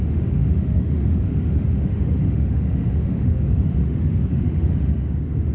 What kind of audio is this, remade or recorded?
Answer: remade